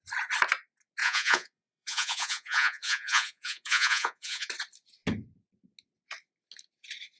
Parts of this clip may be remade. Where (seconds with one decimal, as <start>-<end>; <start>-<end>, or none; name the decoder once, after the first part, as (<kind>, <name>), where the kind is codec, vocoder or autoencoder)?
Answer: 1.0-4.5 (vocoder, Vocos)

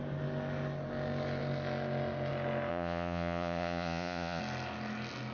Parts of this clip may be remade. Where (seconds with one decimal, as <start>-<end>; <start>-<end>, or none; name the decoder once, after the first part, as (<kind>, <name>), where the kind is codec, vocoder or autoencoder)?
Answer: 2.7-4.4 (vocoder, Vocos)

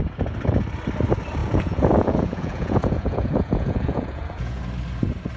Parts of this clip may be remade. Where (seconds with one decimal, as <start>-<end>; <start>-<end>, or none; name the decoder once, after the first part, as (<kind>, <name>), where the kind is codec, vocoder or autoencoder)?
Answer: 1.4-4.6 (vocoder, Vocos)

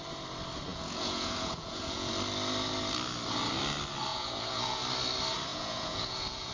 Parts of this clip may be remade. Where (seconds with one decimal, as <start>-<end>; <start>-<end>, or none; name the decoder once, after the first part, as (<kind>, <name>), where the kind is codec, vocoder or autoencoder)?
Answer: 0.7-2.1 (vocoder, Vocos); 4.1-4.8; 5.5-6.5

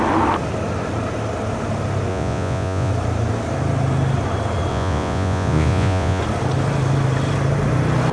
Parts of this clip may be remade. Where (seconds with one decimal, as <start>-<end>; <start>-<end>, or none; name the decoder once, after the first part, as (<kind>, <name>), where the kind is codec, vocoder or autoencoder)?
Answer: 2.1-2.9 (vocoder, Vocos); 4.7-6.2

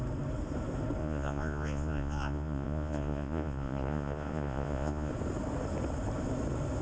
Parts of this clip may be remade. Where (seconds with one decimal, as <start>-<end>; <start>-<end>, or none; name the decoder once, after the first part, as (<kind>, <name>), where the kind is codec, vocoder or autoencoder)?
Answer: 1.0-5.1 (vocoder, Vocos)